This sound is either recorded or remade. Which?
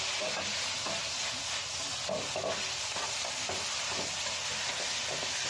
recorded